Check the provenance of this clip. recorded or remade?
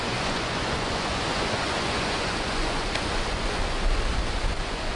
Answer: remade